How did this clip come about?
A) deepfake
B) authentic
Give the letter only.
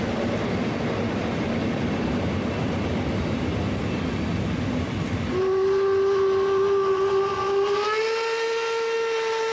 B